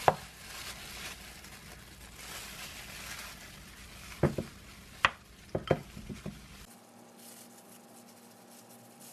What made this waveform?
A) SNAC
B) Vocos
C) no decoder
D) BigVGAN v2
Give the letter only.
C